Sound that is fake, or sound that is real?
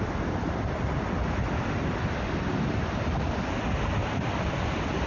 real